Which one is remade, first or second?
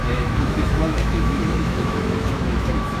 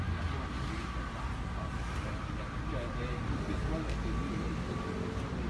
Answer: first